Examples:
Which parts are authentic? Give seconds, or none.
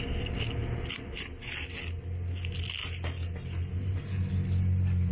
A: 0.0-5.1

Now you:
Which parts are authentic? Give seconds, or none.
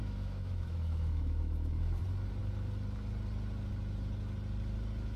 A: 2.0-5.2